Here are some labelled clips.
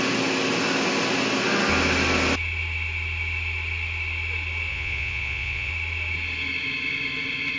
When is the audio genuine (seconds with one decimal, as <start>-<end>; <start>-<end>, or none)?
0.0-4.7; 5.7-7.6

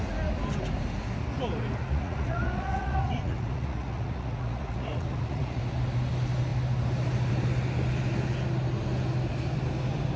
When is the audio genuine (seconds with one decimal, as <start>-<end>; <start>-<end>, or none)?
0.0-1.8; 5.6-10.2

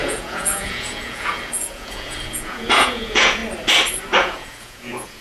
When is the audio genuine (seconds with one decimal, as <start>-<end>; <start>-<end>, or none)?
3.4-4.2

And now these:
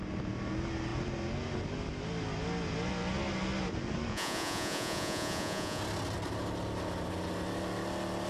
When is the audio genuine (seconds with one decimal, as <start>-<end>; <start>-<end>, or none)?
0.0-4.1; 5.8-8.3

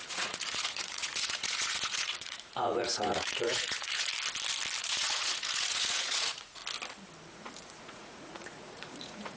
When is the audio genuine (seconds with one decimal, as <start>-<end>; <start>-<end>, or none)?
4.1-4.8; 6.6-7.3

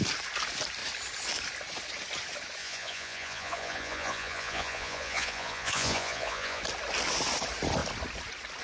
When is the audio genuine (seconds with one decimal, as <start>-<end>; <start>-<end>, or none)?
0.0-2.6; 6.6-8.6